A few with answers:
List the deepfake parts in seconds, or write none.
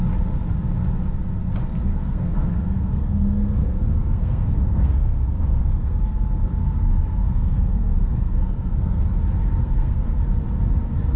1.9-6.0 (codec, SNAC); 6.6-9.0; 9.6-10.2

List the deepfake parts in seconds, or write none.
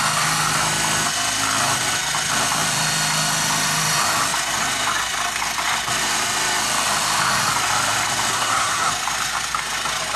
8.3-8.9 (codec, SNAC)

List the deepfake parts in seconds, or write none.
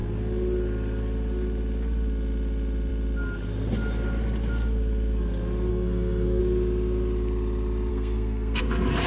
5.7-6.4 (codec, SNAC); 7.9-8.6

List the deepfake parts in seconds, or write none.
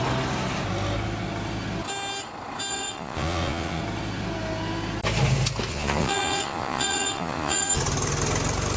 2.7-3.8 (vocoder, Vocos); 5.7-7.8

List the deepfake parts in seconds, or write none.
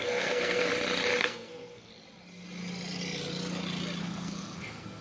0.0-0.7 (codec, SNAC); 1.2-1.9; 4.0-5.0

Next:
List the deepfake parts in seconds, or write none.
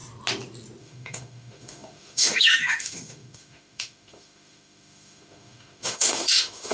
0.8-6.7 (autoencoder, DAC-VAE)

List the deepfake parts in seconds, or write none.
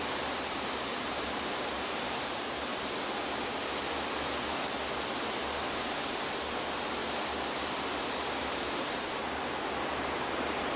0.0-2.7 (vocoder, BigVGAN v2); 6.5-7.0; 8.0-10.8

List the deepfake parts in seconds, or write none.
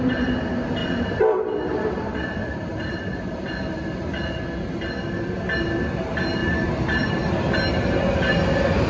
0.8-2.2 (vocoder, BigVGAN v2); 2.7-3.4; 6.4-7.4